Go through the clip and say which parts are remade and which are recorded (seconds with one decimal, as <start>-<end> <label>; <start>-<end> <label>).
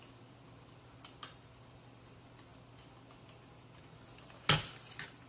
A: 0.0-5.3 recorded